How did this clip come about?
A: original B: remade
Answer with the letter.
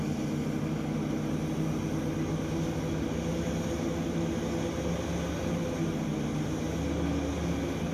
A